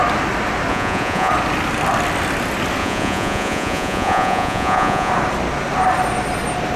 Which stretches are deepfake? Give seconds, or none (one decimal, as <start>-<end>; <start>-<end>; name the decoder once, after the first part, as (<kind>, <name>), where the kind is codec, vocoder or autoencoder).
0.7-1.3 (vocoder, Vocos); 2.8-5.1